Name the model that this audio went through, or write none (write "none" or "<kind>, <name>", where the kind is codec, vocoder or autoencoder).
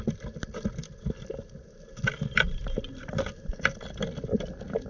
none